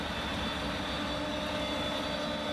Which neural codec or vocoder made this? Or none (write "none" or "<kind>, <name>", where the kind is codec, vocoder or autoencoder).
none